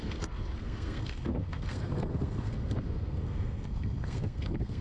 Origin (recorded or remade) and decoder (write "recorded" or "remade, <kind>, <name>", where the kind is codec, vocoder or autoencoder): remade, codec, SNAC